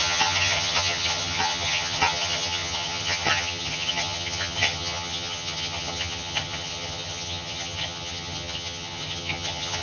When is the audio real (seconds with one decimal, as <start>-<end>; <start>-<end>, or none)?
none